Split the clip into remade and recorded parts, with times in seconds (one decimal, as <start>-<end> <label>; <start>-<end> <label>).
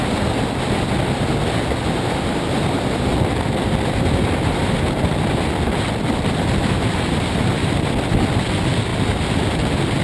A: 0.0-4.6 recorded; 4.6-8.1 remade; 8.1-8.9 recorded; 8.9-9.6 remade; 9.6-10.0 recorded